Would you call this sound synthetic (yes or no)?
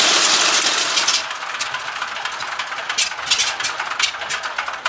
no